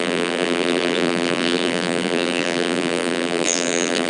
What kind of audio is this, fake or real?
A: fake